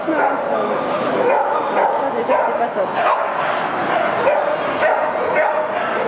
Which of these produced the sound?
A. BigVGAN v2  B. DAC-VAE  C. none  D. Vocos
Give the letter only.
C